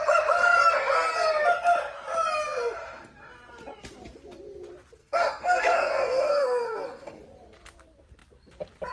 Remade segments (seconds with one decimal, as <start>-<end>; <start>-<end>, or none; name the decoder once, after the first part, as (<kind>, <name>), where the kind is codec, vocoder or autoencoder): 5.0-7.2 (codec, SNAC)